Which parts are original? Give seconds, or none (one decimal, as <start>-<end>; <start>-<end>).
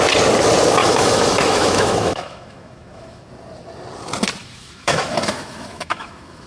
0.0-0.8; 3.3-4.4